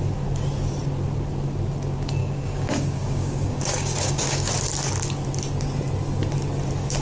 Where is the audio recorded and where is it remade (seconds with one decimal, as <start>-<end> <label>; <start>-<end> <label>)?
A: 0.0-2.2 recorded; 2.2-4.5 remade; 4.5-7.0 recorded